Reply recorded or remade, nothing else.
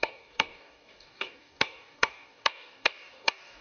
remade